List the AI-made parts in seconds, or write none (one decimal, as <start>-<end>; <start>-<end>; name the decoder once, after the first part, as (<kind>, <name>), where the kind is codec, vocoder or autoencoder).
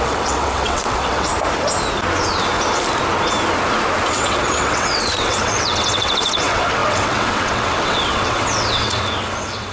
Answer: 0.0-1.3 (vocoder, WaveNeXt); 4.1-9.7